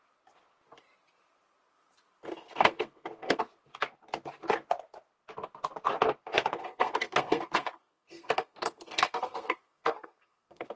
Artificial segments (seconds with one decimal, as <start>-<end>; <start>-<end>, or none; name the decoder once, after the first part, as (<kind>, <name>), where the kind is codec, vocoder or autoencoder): 2.3-3.4 (codec, SNAC); 6.3-10.8